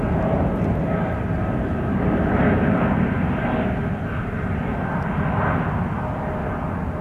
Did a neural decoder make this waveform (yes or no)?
no